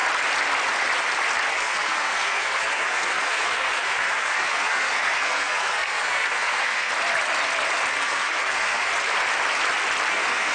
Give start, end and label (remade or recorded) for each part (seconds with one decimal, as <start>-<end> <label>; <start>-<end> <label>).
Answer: 0.0-1.5 recorded; 1.5-6.9 remade; 6.9-7.9 recorded; 7.9-8.9 remade; 8.9-10.1 recorded; 10.1-10.5 remade